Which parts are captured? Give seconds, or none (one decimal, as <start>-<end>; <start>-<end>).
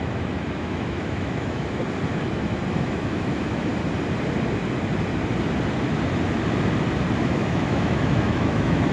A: 1.8-2.7; 3.7-7.2